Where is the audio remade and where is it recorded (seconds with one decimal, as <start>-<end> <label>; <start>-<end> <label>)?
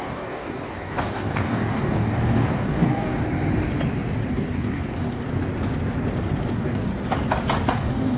0.0-3.2 remade; 3.2-4.3 recorded; 4.3-5.2 remade; 5.2-6.5 recorded; 6.5-6.9 remade; 6.9-7.7 recorded; 7.7-8.2 remade